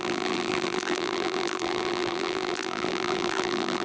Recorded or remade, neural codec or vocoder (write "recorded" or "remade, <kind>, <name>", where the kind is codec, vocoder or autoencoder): remade, vocoder, BigVGAN v2